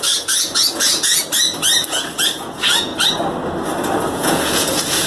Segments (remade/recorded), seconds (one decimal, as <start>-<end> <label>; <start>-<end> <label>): 0.0-1.2 remade; 1.2-1.9 recorded; 1.9-2.9 remade; 2.9-4.1 recorded; 4.1-5.1 remade

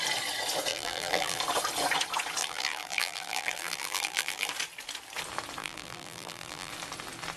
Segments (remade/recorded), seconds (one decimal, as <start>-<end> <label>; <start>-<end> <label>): 0.0-0.7 recorded; 0.7-1.4 remade; 1.4-2.4 recorded; 2.4-4.5 remade; 4.5-5.6 recorded; 5.6-6.7 remade; 6.7-7.4 recorded

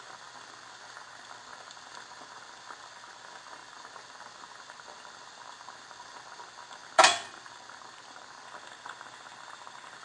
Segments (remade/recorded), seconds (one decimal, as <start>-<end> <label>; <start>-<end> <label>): 0.0-10.0 recorded

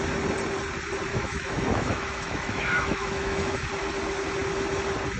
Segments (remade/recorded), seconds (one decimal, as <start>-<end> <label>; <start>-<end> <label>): 0.0-1.1 recorded; 1.1-3.7 remade; 3.7-5.2 recorded